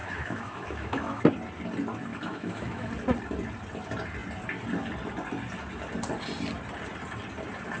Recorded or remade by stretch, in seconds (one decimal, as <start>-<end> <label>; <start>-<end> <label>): 0.0-1.2 remade; 1.2-2.1 recorded; 2.1-2.9 remade; 2.9-7.8 recorded